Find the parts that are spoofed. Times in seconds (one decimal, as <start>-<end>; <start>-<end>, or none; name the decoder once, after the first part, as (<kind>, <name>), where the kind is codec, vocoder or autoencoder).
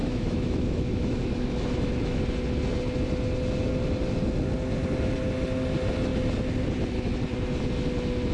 0.0-2.2 (autoencoder, DAC-VAE)